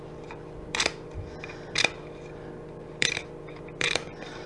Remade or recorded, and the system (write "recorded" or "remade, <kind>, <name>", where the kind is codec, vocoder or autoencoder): remade, vocoder, BigVGAN v2